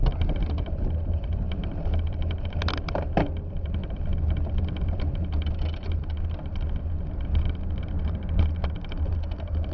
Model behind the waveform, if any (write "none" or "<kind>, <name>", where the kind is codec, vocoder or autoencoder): none